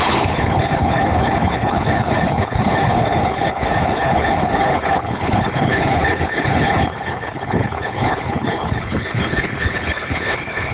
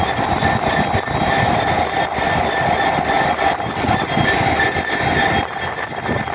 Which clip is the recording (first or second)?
second